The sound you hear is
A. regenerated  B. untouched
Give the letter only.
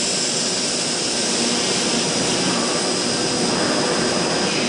B